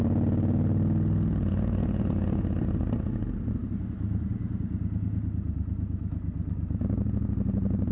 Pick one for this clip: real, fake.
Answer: real